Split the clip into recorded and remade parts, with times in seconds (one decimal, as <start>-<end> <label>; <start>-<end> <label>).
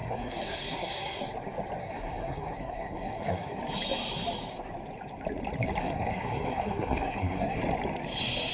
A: 0.0-1.2 remade; 1.2-1.8 recorded; 1.8-3.6 remade; 3.6-5.8 recorded; 5.8-7.6 remade; 7.6-8.5 recorded